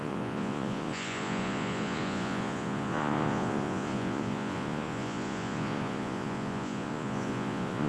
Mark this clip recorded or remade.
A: remade